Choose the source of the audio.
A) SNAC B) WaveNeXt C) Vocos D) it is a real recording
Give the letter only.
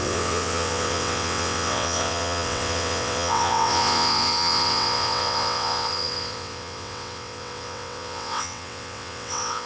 B